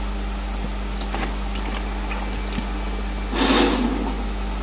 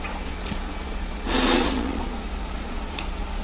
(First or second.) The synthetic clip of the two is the second